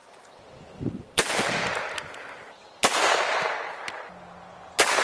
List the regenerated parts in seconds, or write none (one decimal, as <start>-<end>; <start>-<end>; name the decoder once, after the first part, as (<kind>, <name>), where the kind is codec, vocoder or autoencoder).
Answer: 0.0-1.6 (vocoder, BigVGAN v2)